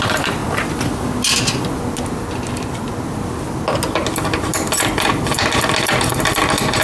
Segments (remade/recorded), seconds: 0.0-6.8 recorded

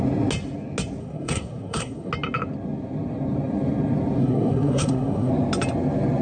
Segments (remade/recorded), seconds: 0.0-1.0 recorded; 1.0-2.1 remade; 2.1-4.2 recorded; 4.2-5.3 remade; 5.3-6.2 recorded